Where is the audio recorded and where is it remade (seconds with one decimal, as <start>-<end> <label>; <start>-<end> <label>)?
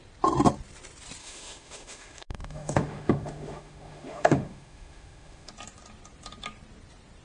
0.0-1.2 recorded; 1.2-5.5 remade; 5.5-7.2 recorded